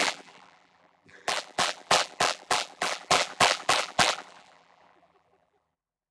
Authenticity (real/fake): fake